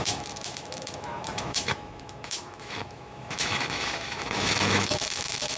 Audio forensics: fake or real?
fake